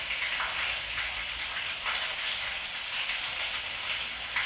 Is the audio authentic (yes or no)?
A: yes